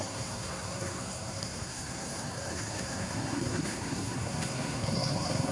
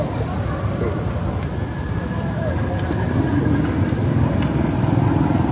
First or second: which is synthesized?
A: first